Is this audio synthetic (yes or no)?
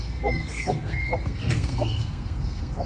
yes